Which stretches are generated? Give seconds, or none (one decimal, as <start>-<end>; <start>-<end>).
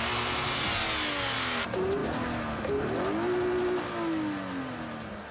none